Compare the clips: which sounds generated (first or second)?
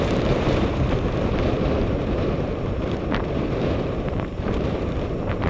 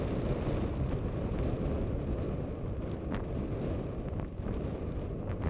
first